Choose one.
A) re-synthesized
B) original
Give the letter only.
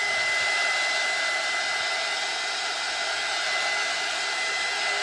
B